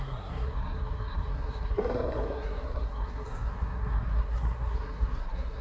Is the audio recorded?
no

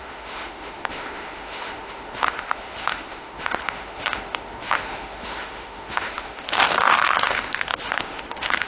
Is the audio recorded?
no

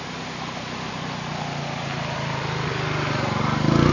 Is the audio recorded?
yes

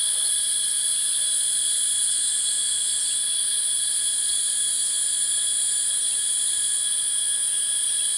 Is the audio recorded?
yes